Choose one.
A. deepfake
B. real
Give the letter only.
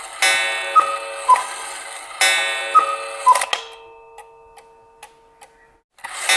B